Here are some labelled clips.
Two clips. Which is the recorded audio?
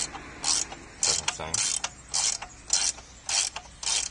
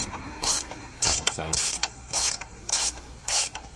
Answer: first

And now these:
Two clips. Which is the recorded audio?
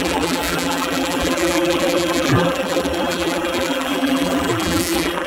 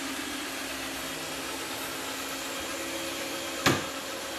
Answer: second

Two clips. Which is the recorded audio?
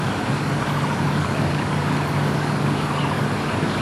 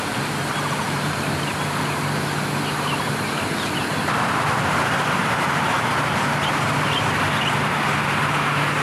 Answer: second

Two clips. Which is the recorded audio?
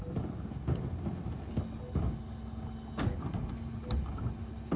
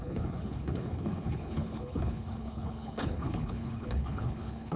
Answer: first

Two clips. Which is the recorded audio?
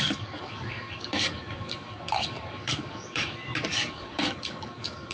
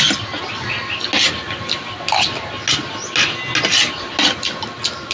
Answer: second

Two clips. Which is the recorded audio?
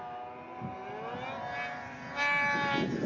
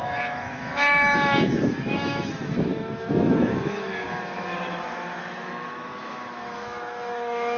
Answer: first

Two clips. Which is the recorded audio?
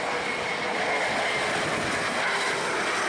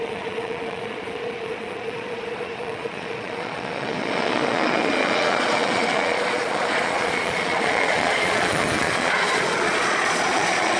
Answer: first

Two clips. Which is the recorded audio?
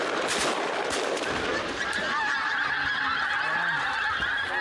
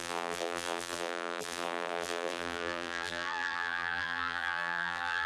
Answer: first